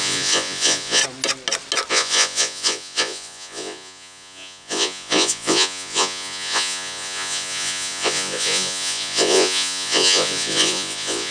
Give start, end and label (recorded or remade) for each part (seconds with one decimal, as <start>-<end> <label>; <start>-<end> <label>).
0.0-1.0 remade; 1.0-1.9 recorded; 1.9-11.3 remade